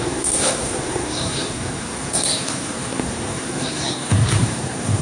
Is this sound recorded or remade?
remade